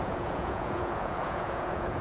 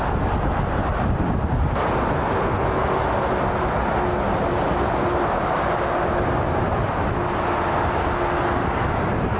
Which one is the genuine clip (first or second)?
second